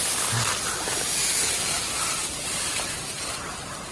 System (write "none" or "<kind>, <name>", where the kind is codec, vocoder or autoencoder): none